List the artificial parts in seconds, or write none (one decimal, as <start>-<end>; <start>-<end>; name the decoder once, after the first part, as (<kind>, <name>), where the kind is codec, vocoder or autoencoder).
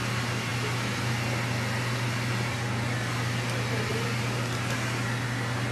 none